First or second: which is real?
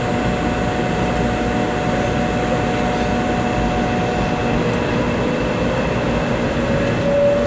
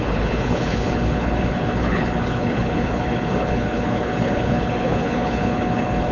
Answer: first